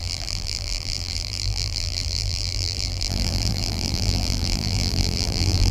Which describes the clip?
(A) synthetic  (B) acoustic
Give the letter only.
A